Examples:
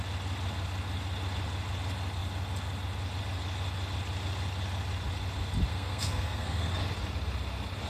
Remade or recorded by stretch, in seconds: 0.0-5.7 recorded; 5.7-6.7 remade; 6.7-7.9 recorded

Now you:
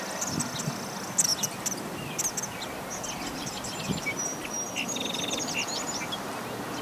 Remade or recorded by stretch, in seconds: 0.0-6.8 recorded

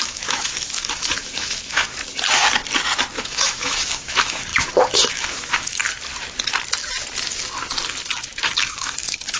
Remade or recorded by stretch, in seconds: 0.0-1.9 remade; 1.9-3.2 recorded; 3.2-5.8 remade; 5.8-8.1 recorded; 8.1-9.4 remade

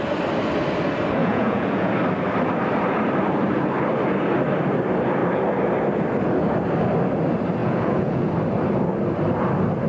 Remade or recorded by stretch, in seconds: 0.0-1.2 recorded; 1.2-1.9 remade; 1.9-7.6 recorded; 7.6-8.3 remade; 8.3-9.9 recorded

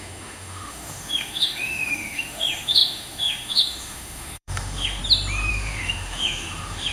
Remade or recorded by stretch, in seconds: 0.0-5.0 remade; 5.0-5.5 recorded; 5.5-6.9 remade

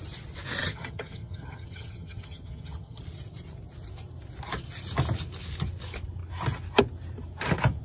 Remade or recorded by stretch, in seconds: 0.0-0.6 recorded; 0.6-3.0 remade; 3.0-7.8 recorded

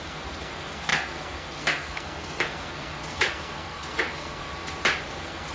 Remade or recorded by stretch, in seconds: 0.0-4.5 remade; 4.5-5.1 recorded; 5.1-5.5 remade

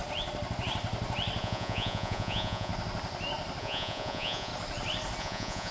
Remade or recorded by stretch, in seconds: 0.0-1.4 recorded; 1.4-2.7 remade; 2.7-3.6 recorded; 3.6-4.5 remade; 4.5-5.2 recorded; 5.2-5.7 remade